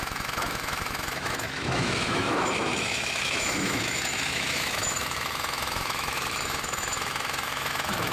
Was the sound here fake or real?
fake